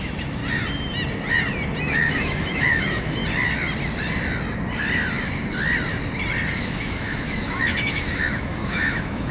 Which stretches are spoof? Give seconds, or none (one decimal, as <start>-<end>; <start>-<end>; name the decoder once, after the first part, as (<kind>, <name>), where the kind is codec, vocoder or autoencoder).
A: 0.0-0.4 (autoencoder, DAC-VAE); 1.8-3.2; 6.6-9.3